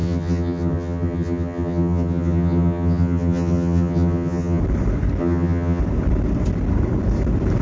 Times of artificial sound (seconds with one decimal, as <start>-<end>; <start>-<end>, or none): 0.0-4.6; 5.2-5.8